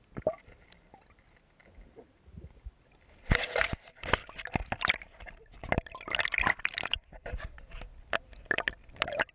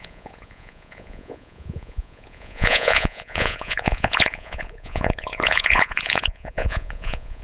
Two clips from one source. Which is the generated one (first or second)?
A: second